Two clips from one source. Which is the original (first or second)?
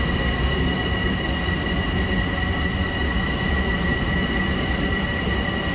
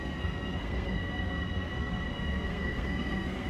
first